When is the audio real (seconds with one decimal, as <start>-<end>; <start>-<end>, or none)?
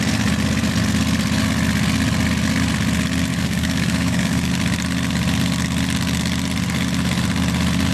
0.0-3.3; 4.5-7.9